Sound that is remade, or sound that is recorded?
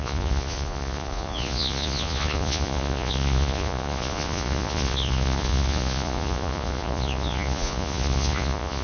remade